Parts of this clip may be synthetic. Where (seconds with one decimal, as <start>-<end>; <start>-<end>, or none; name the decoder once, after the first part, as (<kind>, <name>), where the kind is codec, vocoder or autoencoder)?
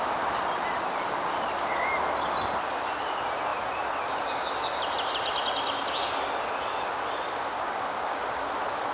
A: none